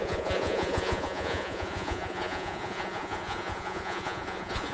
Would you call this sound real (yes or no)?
no